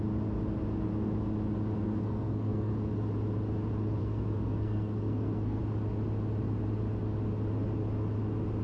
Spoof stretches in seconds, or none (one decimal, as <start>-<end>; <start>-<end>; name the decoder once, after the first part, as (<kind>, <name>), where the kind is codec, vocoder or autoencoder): 1.8-2.7 (codec, SNAC); 4.0-5.6

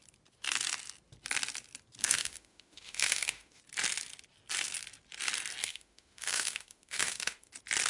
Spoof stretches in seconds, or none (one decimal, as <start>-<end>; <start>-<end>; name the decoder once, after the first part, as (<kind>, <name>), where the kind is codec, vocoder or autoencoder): 2.0-3.6 (autoencoder, DAC-VAE); 5.6-7.5

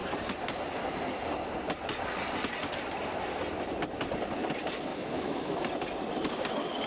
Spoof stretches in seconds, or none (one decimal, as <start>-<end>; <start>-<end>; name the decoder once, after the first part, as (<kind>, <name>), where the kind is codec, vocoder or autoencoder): 4.9-5.6 (autoencoder, DAC-VAE)

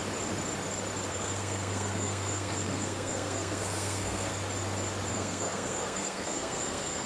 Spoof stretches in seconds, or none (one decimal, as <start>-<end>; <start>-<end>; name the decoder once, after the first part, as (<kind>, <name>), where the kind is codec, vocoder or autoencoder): 1.1-4.3 (codec, SNAC); 5.1-7.1

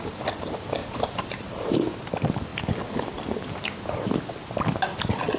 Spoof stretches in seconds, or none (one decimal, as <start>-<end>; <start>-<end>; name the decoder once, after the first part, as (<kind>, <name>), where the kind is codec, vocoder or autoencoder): 0.8-1.8 (vocoder, BigVGAN v2)